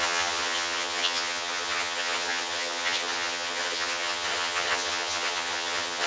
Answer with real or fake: fake